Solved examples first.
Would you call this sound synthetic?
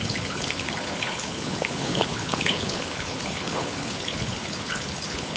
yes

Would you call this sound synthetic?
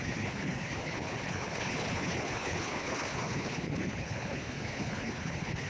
yes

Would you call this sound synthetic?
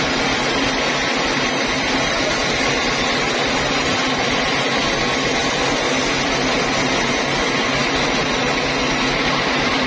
no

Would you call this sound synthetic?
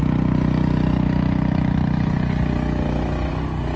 no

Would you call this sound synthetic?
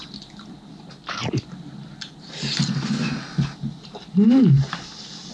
no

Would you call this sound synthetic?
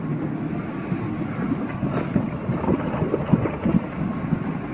no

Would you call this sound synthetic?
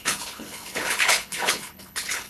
yes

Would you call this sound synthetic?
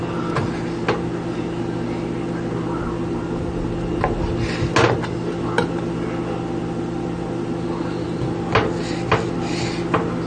no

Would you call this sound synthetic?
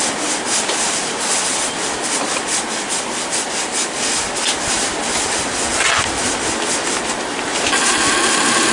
no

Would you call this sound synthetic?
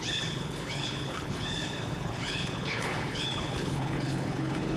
yes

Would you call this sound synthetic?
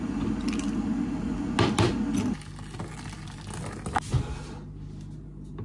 no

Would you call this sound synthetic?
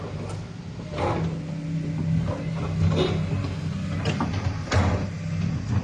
no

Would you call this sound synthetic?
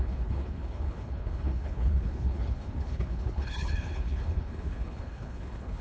yes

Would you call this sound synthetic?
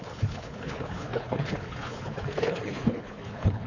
yes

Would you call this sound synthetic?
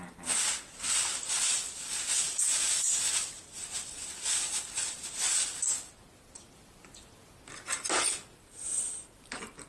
no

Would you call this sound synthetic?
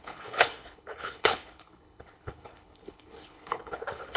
yes